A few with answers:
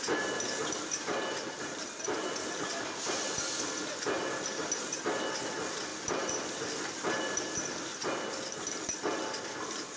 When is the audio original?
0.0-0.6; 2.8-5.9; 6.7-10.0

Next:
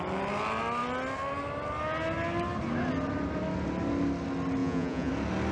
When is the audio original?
0.0-4.6; 5.1-5.5

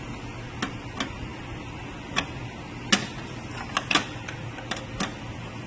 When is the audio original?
0.0-5.7

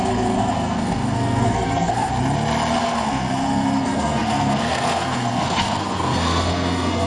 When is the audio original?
2.1-2.8

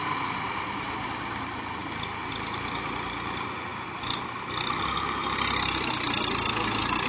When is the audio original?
0.0-7.1

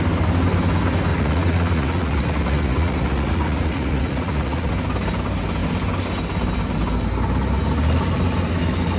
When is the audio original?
0.0-1.1; 4.7-9.0

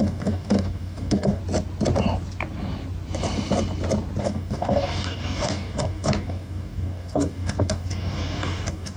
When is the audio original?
1.4-4.2